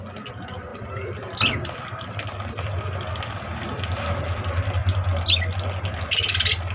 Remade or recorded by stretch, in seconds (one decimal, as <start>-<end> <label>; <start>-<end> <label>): 0.0-6.7 recorded